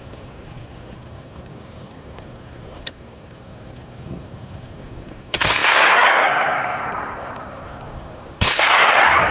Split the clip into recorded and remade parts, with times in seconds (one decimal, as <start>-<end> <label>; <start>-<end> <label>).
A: 0.0-9.3 remade